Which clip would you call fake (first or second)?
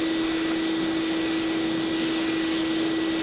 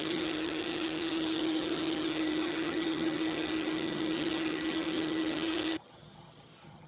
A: second